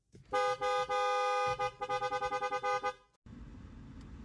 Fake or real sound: real